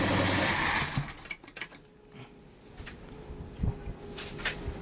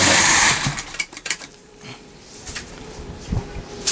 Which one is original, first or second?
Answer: first